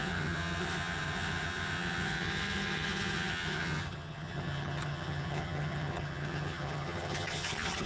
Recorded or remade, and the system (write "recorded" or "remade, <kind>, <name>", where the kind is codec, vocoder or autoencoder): remade, vocoder, HiFi-GAN